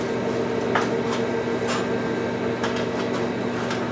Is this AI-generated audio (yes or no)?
no